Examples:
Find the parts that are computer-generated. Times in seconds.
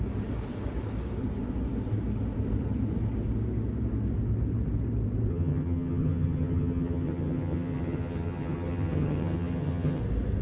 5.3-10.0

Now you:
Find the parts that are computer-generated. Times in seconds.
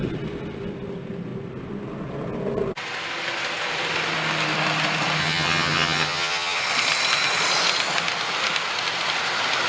5.2-6.6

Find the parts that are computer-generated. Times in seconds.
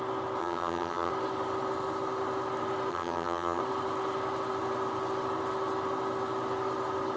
0.4-1.1; 2.9-3.6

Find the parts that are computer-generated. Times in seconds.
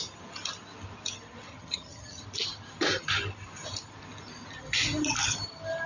1.5-2.2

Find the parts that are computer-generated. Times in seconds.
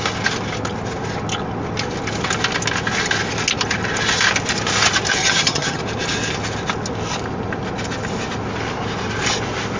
5.2-5.8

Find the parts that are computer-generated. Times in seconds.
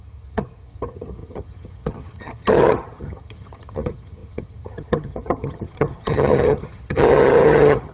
0.0-7.9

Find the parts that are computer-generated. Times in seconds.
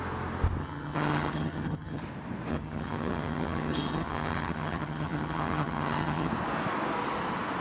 0.6-2.0; 2.5-6.3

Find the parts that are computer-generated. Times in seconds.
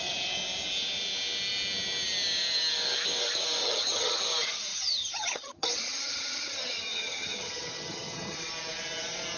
3.6-4.2; 4.7-8.5